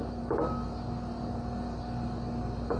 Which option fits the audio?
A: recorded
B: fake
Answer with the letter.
A